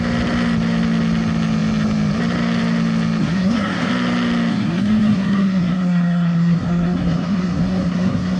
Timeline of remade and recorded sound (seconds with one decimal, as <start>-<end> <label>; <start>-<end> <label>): 0.0-3.2 recorded; 3.2-3.9 remade; 3.9-4.5 recorded; 4.5-8.4 remade